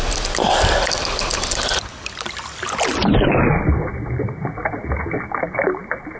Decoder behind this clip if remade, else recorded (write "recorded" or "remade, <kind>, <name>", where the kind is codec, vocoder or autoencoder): recorded